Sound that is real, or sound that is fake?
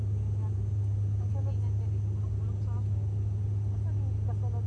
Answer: real